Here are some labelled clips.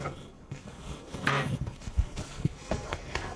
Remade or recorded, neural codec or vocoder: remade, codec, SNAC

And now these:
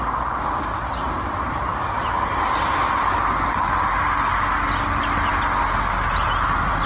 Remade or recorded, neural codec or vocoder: recorded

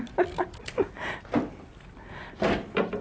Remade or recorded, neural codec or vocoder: recorded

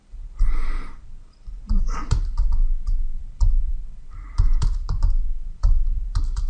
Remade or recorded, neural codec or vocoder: remade, vocoder, BigVGAN v2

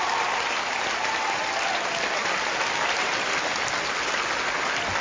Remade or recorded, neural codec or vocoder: recorded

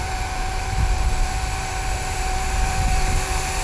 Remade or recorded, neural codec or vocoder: remade, vocoder, BigVGAN v2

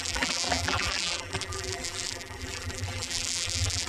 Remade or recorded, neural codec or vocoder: remade, vocoder, BigVGAN v2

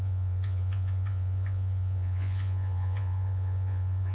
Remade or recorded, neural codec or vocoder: remade, vocoder, Vocos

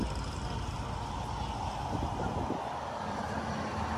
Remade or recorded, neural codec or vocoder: recorded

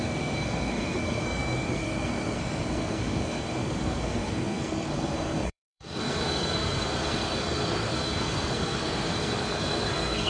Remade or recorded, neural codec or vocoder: remade, codec, SNAC